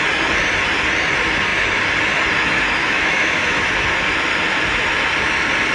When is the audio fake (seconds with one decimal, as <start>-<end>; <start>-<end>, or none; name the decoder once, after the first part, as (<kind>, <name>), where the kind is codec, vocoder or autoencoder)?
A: 2.8-3.7 (autoencoder, DAC-VAE)